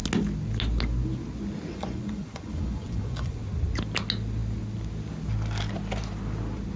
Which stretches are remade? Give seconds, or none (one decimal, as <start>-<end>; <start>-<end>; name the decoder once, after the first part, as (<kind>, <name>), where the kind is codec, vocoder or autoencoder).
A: 1.7-3.4 (vocoder, Vocos)